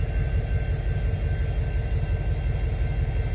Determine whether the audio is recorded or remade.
recorded